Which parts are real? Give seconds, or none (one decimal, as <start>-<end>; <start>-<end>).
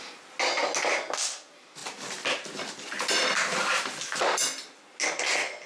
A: 0.0-5.7